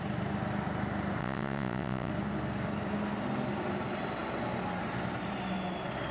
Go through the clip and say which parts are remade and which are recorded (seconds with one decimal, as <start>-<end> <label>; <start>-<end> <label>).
0.0-1.2 recorded; 1.2-2.1 remade; 2.1-6.1 recorded